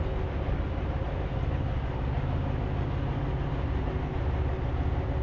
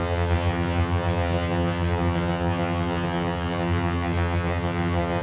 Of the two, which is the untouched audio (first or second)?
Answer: first